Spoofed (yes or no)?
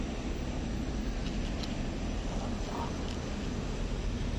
no